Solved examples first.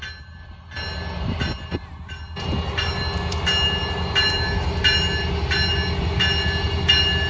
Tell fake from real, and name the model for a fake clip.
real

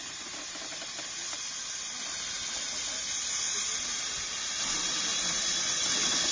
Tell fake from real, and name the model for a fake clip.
real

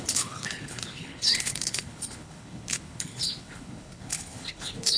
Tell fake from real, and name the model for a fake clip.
fake, codec, HILCodec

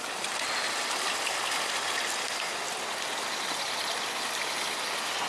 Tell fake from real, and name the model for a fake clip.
real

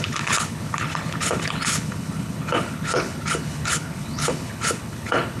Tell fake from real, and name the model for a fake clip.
fake, codec, HILCodec